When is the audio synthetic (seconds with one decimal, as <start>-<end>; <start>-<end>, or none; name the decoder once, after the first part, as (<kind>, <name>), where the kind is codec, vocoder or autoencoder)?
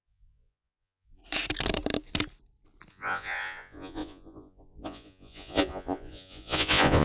0.0-1.2 (vocoder, Vocos); 2.9-7.0